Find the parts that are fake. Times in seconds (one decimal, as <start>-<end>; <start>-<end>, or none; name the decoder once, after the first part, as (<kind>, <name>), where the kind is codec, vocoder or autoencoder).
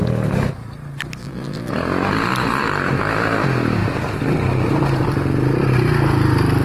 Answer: 1.2-1.7 (vocoder, BigVGAN v2)